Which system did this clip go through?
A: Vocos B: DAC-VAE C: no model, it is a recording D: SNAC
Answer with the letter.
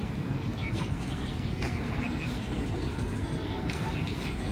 D